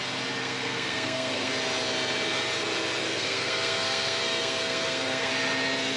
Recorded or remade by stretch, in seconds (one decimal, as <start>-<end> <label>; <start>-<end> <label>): 0.0-0.4 recorded; 0.4-1.5 remade; 1.5-3.0 recorded; 3.0-5.3 remade; 5.3-6.0 recorded

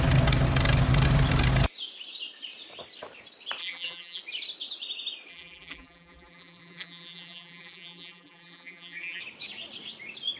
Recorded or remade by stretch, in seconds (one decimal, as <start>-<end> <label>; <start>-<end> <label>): 0.0-3.6 recorded; 3.6-4.2 remade; 4.2-5.3 recorded; 5.3-9.2 remade; 9.2-10.4 recorded

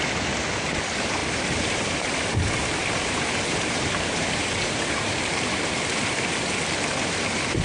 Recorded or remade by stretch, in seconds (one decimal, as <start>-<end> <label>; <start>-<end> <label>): 0.0-1.2 recorded; 1.2-5.1 remade; 5.1-7.6 recorded

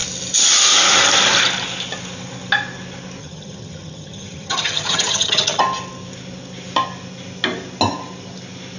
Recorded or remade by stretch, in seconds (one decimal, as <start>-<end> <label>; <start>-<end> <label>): 0.0-3.2 recorded; 3.2-5.6 remade; 5.6-8.8 recorded

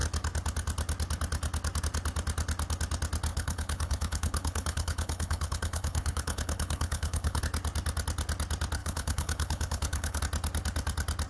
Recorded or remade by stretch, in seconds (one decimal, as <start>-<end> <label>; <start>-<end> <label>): 0.0-3.3 recorded; 3.3-7.4 remade; 7.4-8.8 recorded; 8.8-10.2 remade; 10.2-11.3 recorded

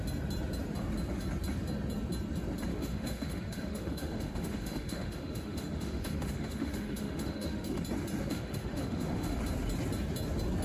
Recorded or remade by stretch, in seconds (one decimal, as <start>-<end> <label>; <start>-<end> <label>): 0.0-2.7 recorded; 2.7-7.8 remade; 7.8-8.3 recorded; 8.3-9.4 remade; 9.4-10.6 recorded